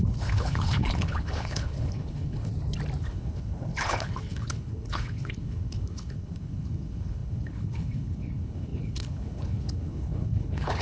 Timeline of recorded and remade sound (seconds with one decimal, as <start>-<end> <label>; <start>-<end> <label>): 0.0-2.5 remade; 2.5-3.0 recorded; 3.0-10.8 remade